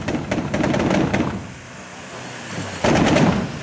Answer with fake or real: real